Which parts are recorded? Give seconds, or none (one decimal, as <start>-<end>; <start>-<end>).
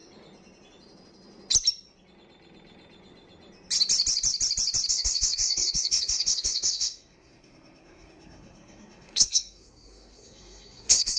0.0-4.9